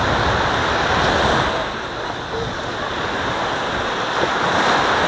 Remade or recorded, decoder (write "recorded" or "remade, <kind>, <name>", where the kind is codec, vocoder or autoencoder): recorded